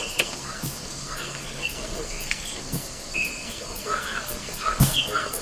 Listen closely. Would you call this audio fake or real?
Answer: fake